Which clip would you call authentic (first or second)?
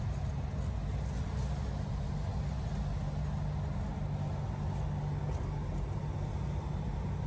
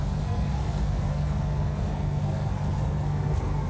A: first